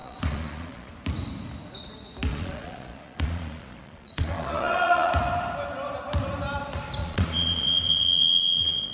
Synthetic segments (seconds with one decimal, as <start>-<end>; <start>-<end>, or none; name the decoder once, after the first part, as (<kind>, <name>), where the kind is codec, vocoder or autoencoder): 0.0-0.9 (vocoder, Vocos); 2.3-5.1; 7.0-8.9